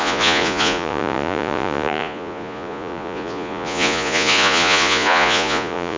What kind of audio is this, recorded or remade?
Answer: remade